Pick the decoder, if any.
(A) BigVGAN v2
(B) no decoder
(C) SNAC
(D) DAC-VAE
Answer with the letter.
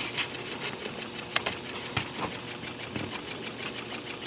A